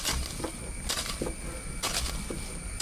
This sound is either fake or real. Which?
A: real